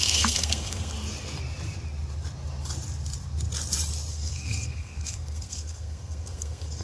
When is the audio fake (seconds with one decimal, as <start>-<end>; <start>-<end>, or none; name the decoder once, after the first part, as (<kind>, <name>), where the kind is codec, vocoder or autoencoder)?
0.0-0.9 (codec, SNAC); 4.1-6.8